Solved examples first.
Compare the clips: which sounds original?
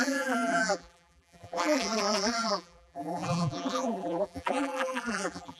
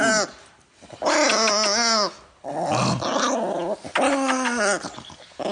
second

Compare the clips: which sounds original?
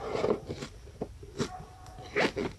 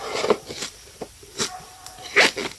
first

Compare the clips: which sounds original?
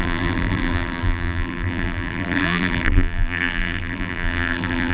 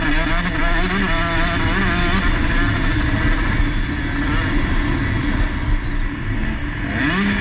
second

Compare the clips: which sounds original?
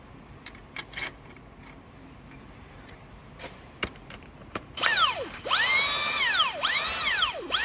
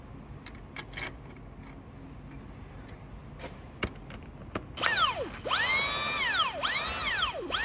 second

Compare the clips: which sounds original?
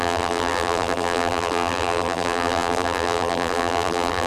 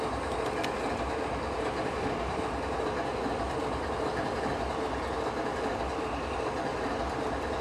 second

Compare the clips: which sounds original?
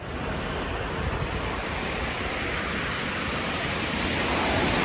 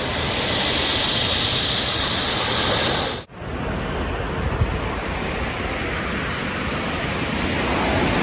second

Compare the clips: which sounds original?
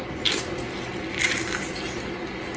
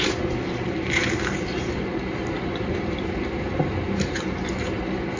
first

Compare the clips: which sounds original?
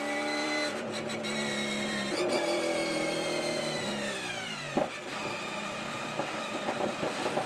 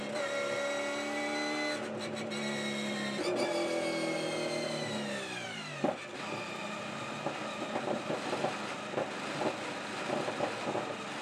second